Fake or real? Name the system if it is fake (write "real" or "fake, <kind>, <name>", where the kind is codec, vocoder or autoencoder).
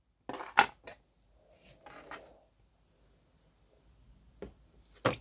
real